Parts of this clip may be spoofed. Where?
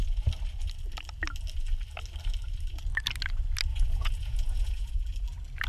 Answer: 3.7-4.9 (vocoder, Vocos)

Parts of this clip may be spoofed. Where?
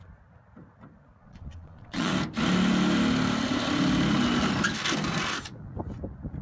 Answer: 1.2-2.1 (vocoder, Vocos)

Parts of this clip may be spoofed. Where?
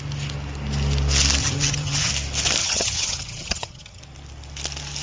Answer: 1.4-2.1 (vocoder, HiFi-GAN); 2.6-4.0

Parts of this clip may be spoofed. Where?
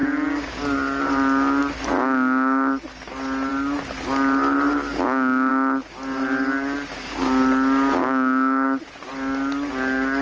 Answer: 8.0-8.8 (codec, DAC)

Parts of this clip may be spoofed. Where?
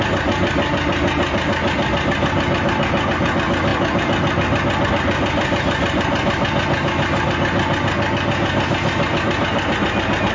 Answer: none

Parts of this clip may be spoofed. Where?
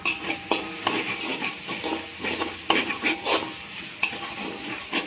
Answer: none